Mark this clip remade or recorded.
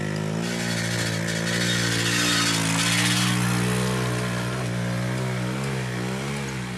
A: recorded